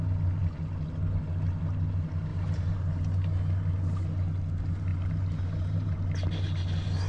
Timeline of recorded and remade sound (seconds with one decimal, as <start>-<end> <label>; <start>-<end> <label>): 0.0-2.3 recorded; 2.3-3.0 remade; 3.0-4.9 recorded; 4.9-5.9 remade; 5.9-7.1 recorded